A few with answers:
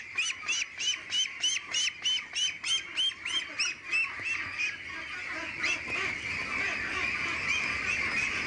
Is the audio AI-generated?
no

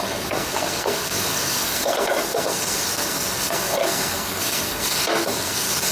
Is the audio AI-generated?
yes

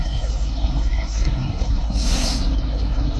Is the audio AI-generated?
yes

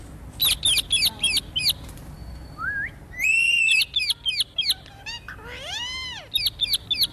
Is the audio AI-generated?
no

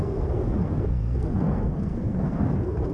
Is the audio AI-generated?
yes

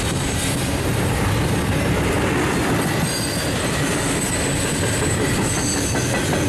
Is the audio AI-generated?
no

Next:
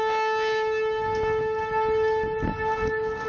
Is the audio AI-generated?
no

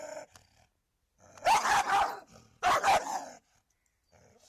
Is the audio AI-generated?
no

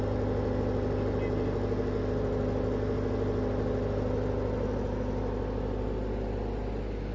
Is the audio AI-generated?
no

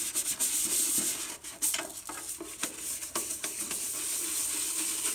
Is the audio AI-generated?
no